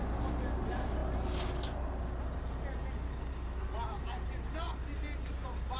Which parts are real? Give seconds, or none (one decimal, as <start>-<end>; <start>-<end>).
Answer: 0.0-5.8